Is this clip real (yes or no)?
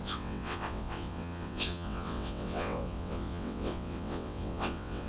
no